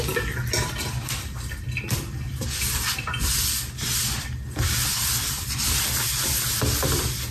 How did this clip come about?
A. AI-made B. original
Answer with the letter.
A